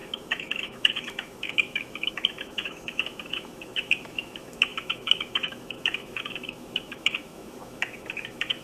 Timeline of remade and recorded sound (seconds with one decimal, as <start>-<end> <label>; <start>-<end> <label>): 0.0-8.6 remade